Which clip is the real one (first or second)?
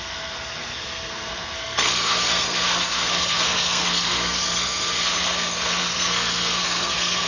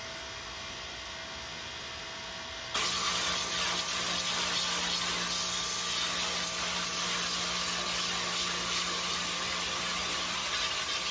second